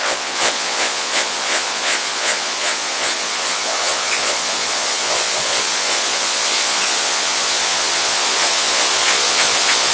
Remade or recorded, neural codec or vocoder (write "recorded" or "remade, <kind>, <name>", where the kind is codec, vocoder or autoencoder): remade, vocoder, Vocos